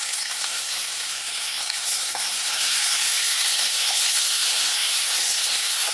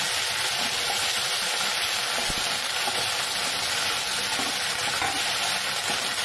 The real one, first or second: second